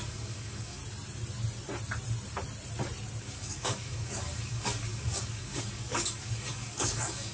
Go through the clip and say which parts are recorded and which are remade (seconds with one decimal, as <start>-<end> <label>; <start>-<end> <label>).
0.0-0.8 remade; 0.8-3.2 recorded; 3.2-7.3 remade